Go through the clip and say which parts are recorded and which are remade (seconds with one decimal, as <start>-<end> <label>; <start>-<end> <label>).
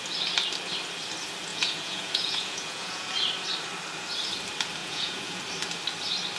0.0-1.5 recorded; 1.5-3.1 remade; 3.1-4.8 recorded; 4.8-5.4 remade; 5.4-6.4 recorded